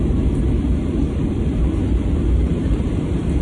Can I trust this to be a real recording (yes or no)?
no